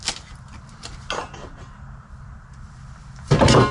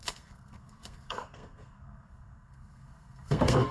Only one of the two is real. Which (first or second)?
first